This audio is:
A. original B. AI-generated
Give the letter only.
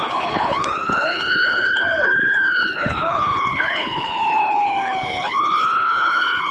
B